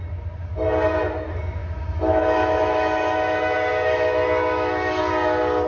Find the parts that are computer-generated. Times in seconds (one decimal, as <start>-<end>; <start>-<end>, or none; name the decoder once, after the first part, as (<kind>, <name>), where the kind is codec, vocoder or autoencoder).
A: 1.6-5.0 (autoencoder, DAC-VAE)